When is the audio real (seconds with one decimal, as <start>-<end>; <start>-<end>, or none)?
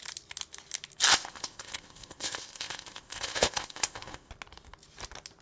0.0-1.1; 4.3-5.4